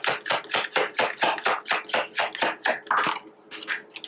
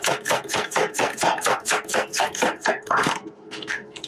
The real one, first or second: first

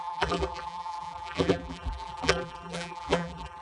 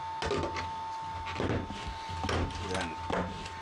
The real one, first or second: second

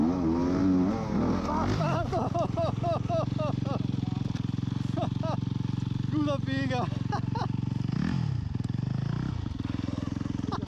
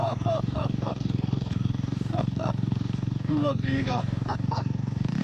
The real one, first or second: first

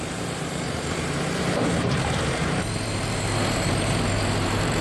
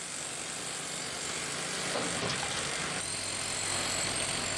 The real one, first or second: second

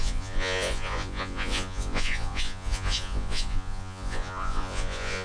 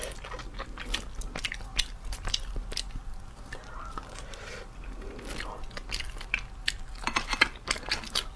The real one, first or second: second